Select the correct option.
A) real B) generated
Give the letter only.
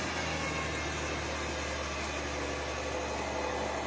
A